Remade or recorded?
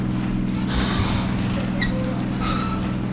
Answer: recorded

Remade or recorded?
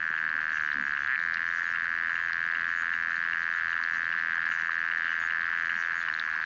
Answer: recorded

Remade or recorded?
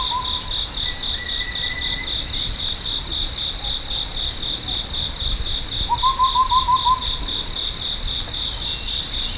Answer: recorded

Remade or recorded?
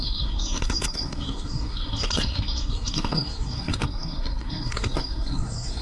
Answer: remade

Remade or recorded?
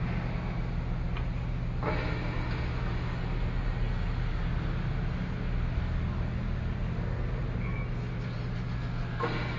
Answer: recorded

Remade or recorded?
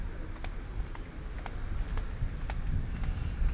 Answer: recorded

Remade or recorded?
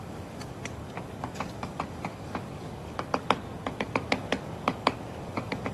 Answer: remade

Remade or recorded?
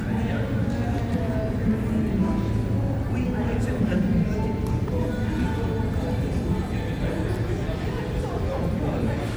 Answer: recorded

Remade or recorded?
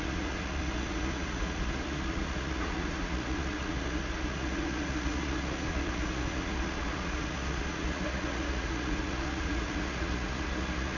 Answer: remade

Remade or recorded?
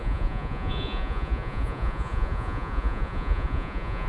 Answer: remade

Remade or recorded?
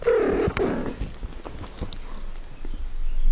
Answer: recorded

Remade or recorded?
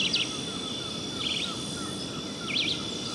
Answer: recorded